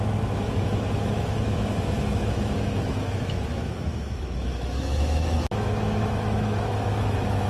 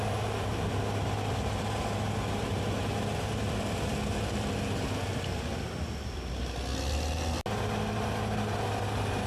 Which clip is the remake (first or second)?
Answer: first